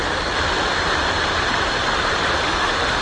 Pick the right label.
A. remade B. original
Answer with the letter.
B